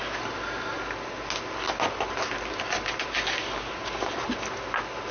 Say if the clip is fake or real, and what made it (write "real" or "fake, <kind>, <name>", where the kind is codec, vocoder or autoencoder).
real